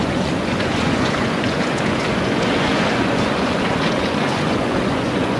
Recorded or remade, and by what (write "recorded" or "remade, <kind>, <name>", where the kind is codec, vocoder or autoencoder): remade, vocoder, Vocos